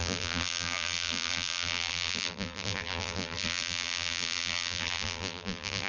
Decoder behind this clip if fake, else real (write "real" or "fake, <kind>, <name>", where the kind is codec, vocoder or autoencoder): fake, vocoder, BigVGAN v2